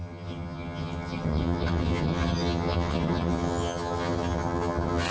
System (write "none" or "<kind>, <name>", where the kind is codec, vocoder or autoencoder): vocoder, HiFi-GAN